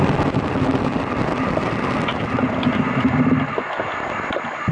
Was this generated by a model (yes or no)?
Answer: no